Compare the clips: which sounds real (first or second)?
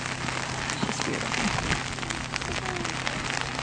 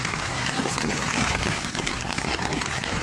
first